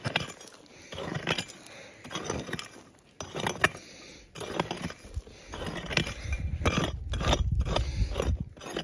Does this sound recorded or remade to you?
recorded